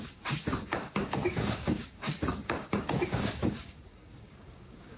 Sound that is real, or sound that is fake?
fake